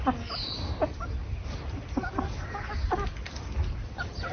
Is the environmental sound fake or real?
real